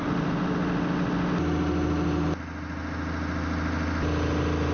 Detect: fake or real real